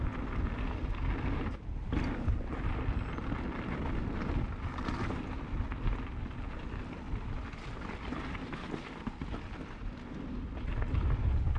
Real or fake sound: real